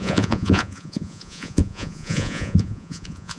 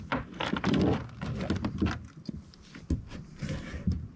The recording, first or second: second